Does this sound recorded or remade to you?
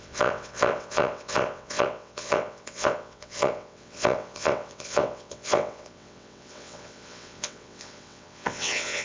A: remade